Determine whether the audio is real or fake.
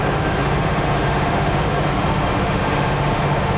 fake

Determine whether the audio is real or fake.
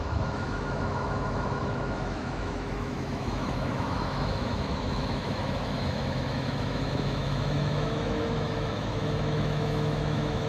fake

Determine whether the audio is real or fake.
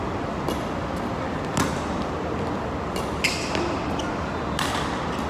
real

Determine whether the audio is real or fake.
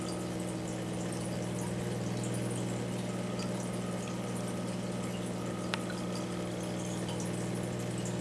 real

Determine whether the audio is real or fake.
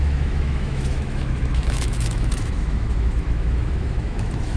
fake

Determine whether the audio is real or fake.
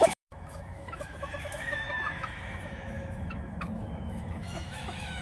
fake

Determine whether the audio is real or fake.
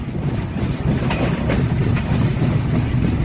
real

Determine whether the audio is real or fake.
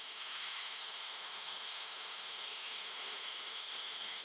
fake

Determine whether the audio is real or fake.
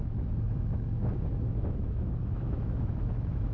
fake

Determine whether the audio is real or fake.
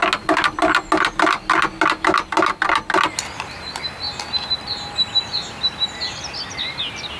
real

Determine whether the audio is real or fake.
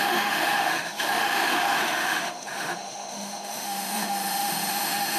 fake